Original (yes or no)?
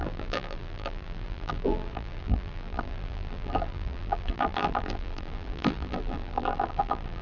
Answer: no